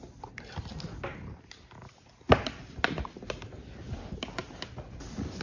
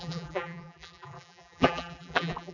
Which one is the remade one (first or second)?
second